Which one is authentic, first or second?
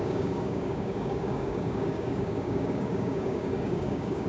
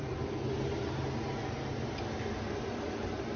second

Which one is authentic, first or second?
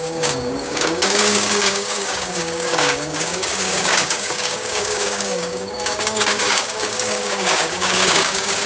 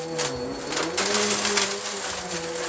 second